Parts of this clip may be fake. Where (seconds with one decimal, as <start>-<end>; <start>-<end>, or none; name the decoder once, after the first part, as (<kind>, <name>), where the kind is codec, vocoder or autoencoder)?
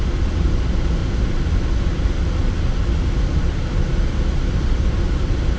0.0-1.0 (vocoder, BigVGAN v2); 3.4-5.6